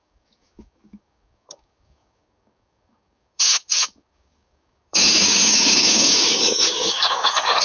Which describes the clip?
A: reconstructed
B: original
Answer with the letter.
A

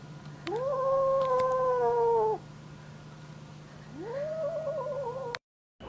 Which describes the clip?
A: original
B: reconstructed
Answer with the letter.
A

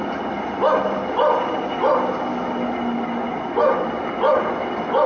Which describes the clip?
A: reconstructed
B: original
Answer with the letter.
B